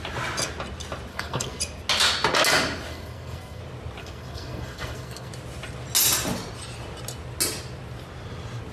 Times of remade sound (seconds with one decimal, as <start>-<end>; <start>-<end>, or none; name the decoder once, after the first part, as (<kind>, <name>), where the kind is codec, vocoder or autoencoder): 1.1-1.6 (codec, SNAC); 2.9-3.6; 4.0-5.3